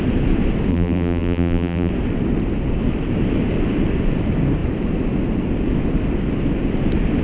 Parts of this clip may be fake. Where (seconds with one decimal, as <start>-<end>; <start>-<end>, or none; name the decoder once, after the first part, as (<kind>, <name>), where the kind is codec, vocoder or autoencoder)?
0.7-1.9 (vocoder, BigVGAN v2)